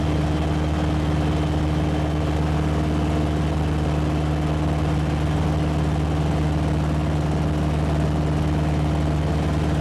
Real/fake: real